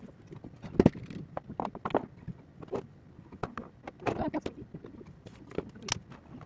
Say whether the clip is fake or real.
real